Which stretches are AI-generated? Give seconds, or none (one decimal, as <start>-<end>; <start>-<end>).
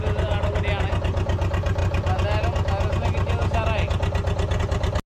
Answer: none